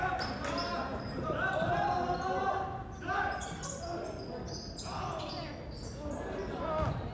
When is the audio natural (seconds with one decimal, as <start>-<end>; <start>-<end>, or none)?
0.0-0.9; 1.9-7.1